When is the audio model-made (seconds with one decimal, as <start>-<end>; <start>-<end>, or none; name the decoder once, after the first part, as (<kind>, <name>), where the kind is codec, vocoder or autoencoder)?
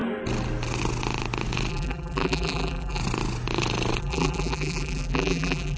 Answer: 1.7-3.0 (vocoder, BigVGAN v2); 4.0-5.8